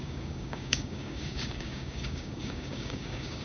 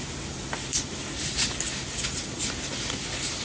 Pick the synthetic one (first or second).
first